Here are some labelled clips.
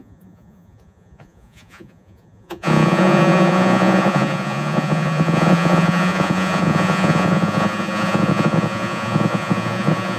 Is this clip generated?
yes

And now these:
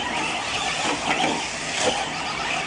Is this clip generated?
no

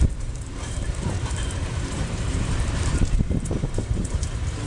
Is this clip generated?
yes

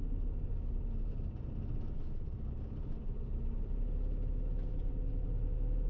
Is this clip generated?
no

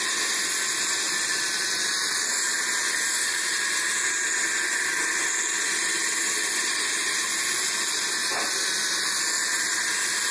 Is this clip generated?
no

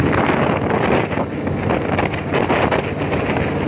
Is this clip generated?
no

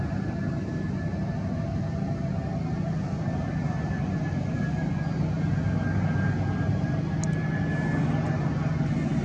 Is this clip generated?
no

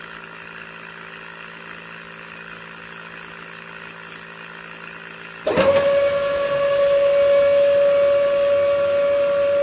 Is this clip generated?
no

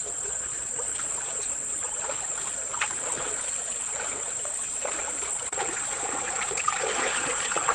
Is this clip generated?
yes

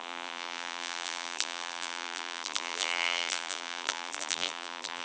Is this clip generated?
yes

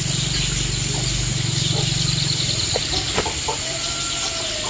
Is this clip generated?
no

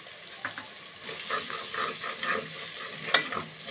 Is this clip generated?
no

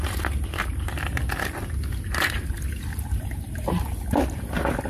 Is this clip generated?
no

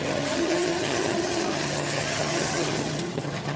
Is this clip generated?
yes